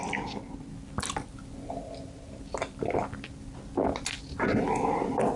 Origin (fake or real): real